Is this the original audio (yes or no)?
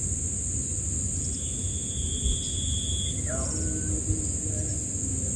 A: yes